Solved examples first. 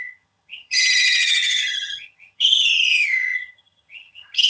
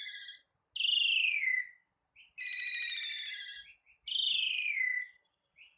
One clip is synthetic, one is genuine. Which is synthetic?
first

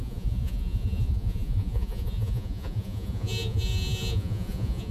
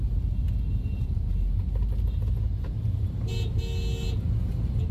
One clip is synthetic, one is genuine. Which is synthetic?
first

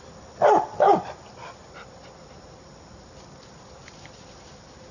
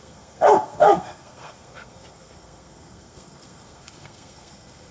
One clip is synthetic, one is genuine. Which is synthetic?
second